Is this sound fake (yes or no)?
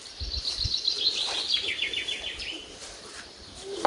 yes